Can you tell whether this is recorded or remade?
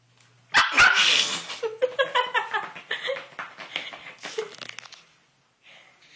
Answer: recorded